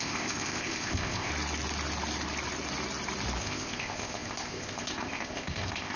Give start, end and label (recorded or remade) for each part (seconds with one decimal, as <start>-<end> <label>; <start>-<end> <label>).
0.0-1.3 remade; 1.3-3.4 recorded; 3.4-6.0 remade

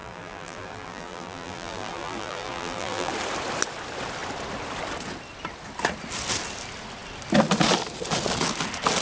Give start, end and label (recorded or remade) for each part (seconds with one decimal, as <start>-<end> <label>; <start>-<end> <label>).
0.0-3.1 remade; 3.1-9.0 recorded

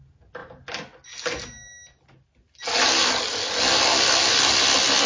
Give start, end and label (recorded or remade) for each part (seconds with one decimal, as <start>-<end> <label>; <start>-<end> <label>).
0.0-5.1 recorded

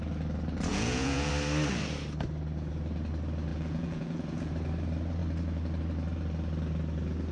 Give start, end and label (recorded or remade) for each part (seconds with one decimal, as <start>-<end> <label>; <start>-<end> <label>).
0.0-0.7 recorded; 0.7-1.3 remade; 1.3-3.5 recorded; 3.5-4.5 remade; 4.5-7.3 recorded

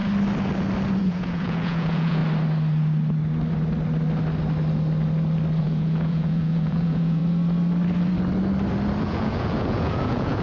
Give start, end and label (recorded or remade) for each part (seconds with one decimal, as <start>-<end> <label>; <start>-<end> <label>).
0.0-1.0 recorded; 1.0-2.2 remade; 2.2-5.6 recorded; 5.6-7.2 remade; 7.2-9.0 recorded; 9.0-10.4 remade

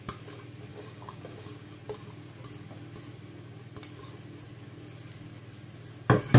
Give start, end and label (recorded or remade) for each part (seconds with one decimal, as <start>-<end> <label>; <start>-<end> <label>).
0.0-0.7 recorded; 0.7-1.7 remade; 1.7-6.4 recorded

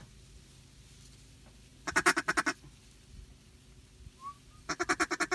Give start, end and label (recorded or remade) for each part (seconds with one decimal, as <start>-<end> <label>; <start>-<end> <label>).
0.0-5.3 recorded

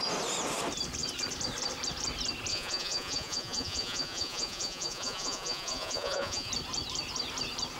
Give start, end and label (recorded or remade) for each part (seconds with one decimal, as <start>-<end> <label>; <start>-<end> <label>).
0.0-2.5 recorded; 2.5-6.5 remade; 6.5-7.8 recorded